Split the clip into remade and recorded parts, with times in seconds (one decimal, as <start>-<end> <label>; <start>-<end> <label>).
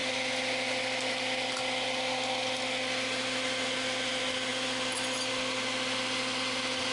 0.0-6.9 recorded